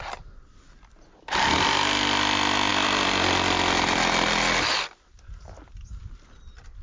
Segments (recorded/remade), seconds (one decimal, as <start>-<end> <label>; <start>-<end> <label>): 0.0-6.8 recorded